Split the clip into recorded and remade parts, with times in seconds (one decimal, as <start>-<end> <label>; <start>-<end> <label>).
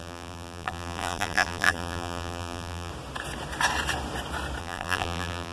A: 0.0-2.9 remade; 2.9-4.6 recorded; 4.6-5.5 remade